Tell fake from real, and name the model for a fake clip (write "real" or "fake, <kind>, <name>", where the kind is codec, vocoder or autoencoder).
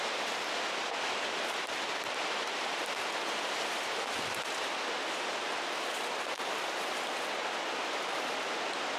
real